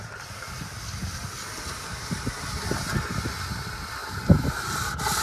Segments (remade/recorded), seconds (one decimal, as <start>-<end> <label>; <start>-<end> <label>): 0.0-1.0 recorded; 1.0-2.7 remade; 2.7-5.2 recorded